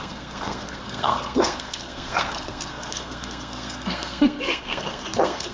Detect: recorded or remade remade